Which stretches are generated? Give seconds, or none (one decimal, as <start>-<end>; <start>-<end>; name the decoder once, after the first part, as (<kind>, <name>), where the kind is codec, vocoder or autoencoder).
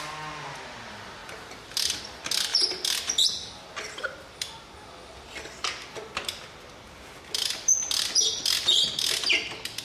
none